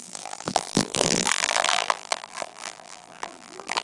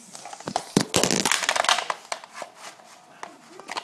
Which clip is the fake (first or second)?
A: first